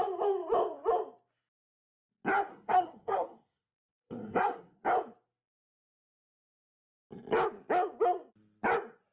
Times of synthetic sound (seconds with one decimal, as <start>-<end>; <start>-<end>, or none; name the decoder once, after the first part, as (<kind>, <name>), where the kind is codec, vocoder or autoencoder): 2.5-4.8 (codec, SNAC)